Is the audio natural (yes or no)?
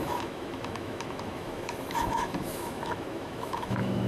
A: no